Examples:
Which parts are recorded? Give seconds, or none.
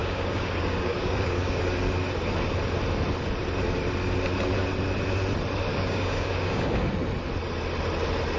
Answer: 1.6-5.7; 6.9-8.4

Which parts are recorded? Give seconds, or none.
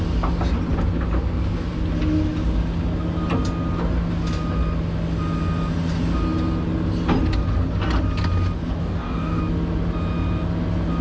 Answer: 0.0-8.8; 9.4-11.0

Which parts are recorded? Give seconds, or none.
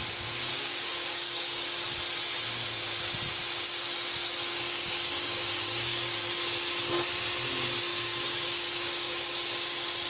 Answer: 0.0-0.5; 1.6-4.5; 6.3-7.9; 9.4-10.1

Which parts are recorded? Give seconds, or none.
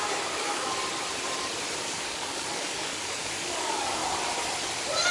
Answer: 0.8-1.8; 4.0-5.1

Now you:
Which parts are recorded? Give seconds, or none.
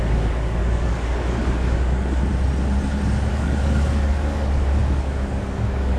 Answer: 2.3-3.3